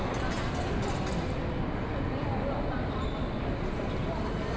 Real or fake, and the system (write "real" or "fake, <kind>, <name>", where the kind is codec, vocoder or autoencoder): real